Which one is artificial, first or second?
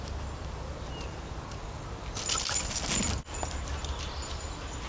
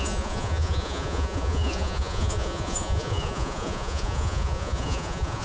second